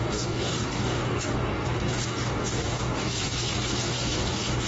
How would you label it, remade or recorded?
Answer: remade